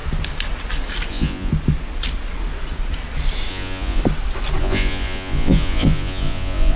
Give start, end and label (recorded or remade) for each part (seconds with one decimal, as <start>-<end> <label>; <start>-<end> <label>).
0.0-1.1 recorded; 1.1-1.5 remade; 1.5-3.5 recorded; 3.5-4.0 remade; 4.0-4.6 recorded; 4.6-6.8 remade